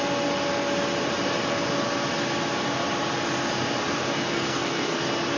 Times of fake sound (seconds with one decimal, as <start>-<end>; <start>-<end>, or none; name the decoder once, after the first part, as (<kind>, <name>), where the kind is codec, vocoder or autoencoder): 4.3-5.0 (codec, SNAC)